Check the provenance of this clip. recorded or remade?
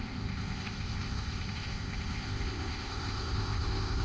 remade